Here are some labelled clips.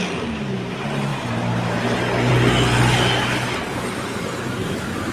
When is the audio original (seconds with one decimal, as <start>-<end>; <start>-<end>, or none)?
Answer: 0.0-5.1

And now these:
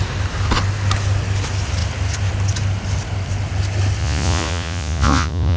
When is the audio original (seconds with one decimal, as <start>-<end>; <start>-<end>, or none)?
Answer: 0.0-4.0

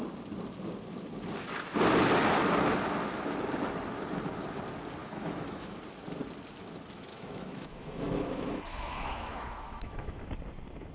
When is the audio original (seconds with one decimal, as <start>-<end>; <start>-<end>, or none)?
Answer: 0.0-5.0; 5.8-7.1; 10.3-10.9

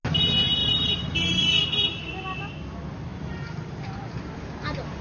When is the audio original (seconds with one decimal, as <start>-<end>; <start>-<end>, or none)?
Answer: 0.0-0.6; 2.2-3.1; 4.3-5.0

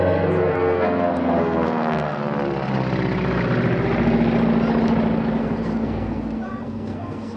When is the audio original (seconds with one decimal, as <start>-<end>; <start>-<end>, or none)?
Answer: 2.2-5.4